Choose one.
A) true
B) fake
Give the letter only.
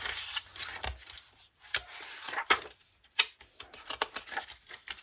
A